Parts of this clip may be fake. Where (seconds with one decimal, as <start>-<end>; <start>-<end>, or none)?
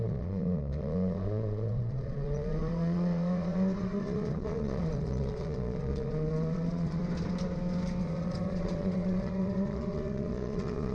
0.0-7.0; 8.0-10.9